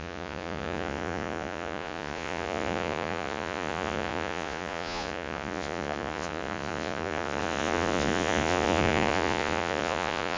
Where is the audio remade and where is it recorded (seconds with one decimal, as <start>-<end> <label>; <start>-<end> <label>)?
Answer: 0.0-10.4 remade